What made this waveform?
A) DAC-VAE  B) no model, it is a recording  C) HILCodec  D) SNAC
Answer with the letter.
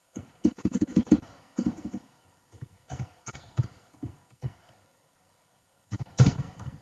D